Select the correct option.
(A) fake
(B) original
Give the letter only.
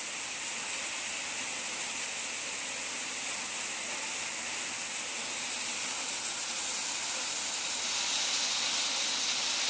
B